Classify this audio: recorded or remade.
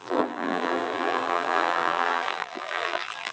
remade